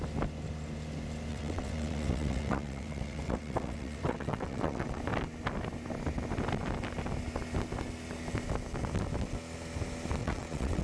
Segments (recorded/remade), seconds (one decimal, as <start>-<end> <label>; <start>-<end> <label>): 0.0-1.3 recorded; 1.3-5.0 remade; 5.0-10.2 recorded; 10.2-10.8 remade